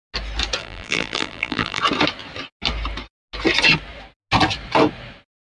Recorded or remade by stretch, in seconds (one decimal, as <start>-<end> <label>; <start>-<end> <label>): 0.0-0.6 recorded; 0.6-1.8 remade; 1.8-5.6 recorded